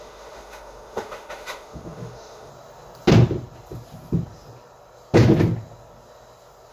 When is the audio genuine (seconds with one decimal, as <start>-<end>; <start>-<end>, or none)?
2.5-6.7